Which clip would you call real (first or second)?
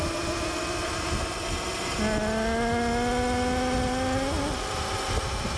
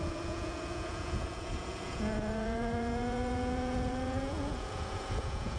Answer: first